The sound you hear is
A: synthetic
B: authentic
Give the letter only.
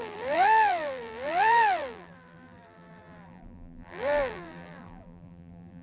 A